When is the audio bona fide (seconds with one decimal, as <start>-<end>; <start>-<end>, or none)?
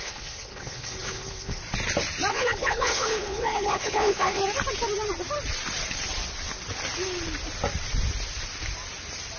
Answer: 1.6-2.3; 4.4-9.4